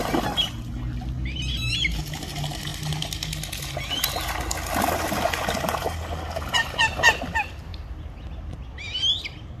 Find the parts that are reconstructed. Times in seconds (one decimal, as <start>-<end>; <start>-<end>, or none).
none